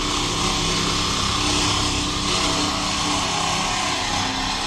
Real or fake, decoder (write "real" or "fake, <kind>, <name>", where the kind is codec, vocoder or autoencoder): real